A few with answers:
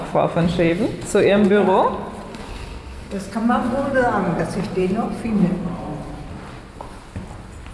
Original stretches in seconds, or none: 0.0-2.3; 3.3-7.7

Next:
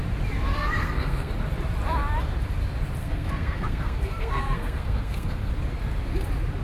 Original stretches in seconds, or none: 0.0-0.5; 1.3-3.0; 5.5-6.6

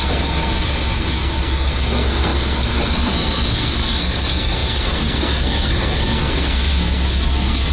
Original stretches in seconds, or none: none